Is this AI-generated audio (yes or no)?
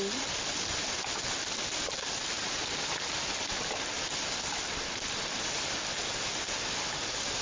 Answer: no